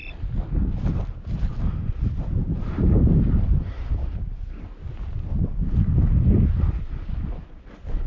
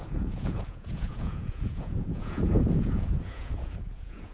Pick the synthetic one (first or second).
second